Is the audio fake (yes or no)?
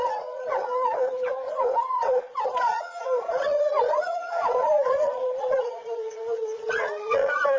yes